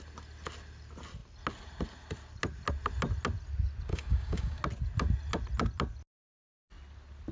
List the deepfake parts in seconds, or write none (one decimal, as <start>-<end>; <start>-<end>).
3.9-4.6